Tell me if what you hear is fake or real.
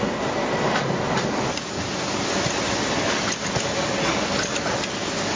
real